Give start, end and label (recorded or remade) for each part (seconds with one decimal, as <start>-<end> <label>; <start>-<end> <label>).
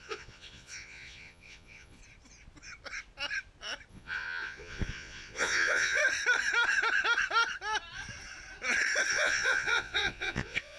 0.0-2.0 remade; 2.0-3.9 recorded; 3.9-6.0 remade; 6.0-9.1 recorded; 9.1-10.8 remade